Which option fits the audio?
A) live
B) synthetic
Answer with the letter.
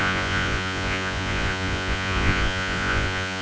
B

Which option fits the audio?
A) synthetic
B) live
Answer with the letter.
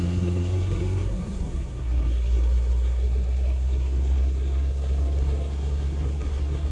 A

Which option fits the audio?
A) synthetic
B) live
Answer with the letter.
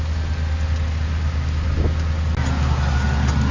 B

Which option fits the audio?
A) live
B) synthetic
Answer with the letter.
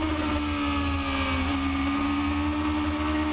A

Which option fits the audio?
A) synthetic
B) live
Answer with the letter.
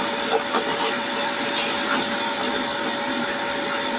B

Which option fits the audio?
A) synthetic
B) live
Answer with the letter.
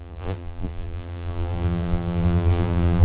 A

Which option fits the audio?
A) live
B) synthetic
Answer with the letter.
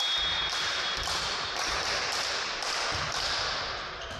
A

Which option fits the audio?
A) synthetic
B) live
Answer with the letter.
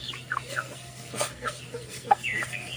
A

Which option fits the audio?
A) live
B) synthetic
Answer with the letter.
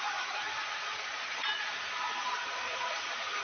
B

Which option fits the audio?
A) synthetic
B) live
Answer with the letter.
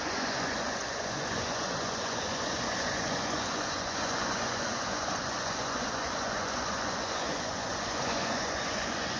A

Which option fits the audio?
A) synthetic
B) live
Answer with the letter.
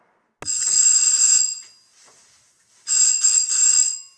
B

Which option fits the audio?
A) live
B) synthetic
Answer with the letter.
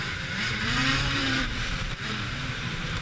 B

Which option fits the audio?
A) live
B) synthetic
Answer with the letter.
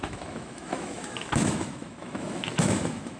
B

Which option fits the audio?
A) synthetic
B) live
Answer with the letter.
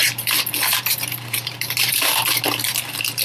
A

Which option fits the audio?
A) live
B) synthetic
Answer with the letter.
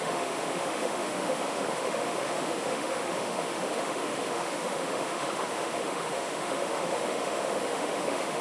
B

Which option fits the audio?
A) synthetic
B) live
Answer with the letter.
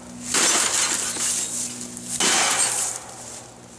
B